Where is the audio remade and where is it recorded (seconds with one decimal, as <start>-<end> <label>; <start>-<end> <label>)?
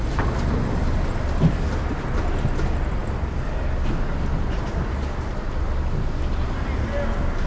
0.0-7.5 recorded